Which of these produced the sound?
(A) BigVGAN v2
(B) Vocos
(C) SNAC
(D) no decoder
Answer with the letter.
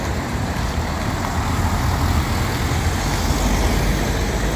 D